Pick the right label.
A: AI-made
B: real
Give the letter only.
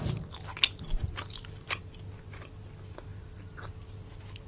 B